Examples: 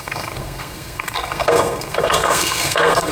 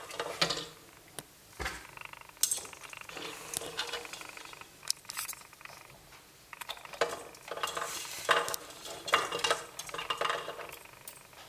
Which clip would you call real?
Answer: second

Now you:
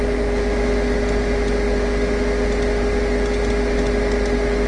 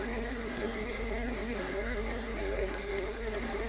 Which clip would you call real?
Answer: first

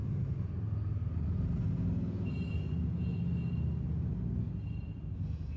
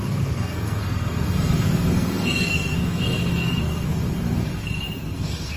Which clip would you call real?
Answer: first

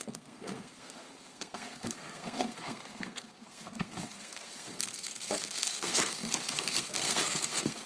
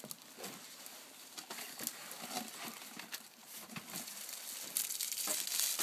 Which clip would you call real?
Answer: second